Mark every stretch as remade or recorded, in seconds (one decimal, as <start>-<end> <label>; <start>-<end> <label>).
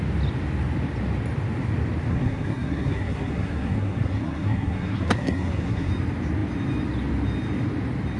0.0-2.1 recorded; 2.1-5.9 remade; 5.9-8.2 recorded